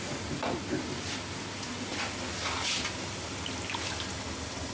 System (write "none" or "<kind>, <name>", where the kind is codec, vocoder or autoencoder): none